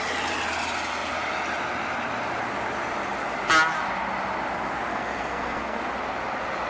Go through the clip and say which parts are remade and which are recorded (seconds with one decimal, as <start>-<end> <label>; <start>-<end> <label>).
0.0-4.9 recorded; 4.9-5.8 remade; 5.8-6.7 recorded